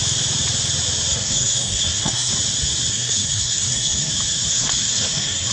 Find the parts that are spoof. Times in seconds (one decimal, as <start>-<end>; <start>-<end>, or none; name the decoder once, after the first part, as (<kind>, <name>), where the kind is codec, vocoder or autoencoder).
1.1-2.3 (codec, SNAC); 2.9-4.1; 4.5-5.5